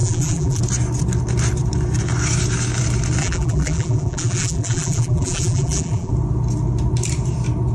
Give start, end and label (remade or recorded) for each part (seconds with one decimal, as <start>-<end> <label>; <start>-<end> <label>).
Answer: 0.0-0.6 remade; 0.6-3.2 recorded; 3.2-6.1 remade; 6.1-7.7 recorded